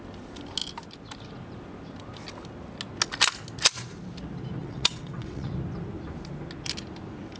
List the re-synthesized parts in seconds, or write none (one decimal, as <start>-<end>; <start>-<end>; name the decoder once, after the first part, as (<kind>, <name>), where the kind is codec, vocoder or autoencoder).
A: 4.6-5.5 (vocoder, WaveNeXt)

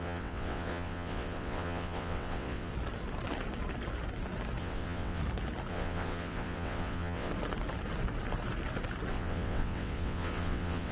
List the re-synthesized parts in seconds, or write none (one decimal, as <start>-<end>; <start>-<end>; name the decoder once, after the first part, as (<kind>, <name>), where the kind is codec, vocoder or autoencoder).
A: 0.0-2.7 (vocoder, WaveNeXt); 4.6-5.2; 5.7-7.3; 9.1-10.9

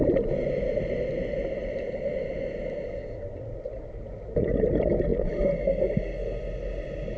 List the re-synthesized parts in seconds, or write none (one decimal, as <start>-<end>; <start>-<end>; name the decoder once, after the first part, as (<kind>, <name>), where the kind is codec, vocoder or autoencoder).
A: none

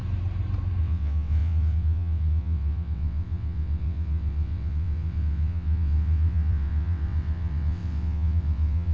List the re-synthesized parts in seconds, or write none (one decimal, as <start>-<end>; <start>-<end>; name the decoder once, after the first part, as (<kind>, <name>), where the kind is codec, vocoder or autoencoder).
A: 0.8-8.9 (vocoder, WaveNeXt)

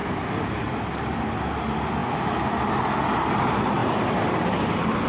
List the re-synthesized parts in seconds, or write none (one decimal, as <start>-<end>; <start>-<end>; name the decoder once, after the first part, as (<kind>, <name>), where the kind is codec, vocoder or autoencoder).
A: none

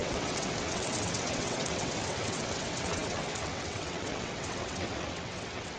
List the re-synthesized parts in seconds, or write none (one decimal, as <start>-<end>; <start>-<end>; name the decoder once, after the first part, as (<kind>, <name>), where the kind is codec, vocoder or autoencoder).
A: 0.0-5.8 (vocoder, WaveNeXt)

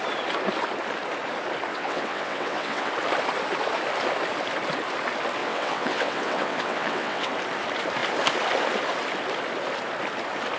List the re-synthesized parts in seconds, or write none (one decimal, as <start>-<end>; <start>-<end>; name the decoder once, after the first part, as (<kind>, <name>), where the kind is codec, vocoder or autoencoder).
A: 1.7-2.9 (vocoder, WaveNeXt); 5.4-7.3